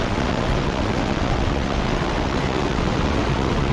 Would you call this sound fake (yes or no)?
yes